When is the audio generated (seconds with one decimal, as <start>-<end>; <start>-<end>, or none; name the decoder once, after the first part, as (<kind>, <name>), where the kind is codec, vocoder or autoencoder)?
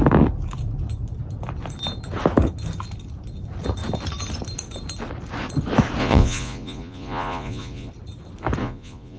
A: 6.0-7.9 (vocoder, Vocos); 8.6-9.2